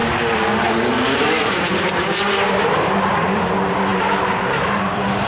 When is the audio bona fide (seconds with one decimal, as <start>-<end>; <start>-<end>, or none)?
0.0-1.2